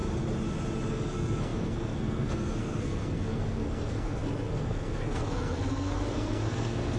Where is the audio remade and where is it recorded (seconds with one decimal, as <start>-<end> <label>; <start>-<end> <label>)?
0.0-0.9 recorded; 0.9-7.0 remade